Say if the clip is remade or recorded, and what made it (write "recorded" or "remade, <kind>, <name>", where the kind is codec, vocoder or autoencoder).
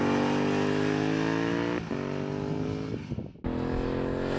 recorded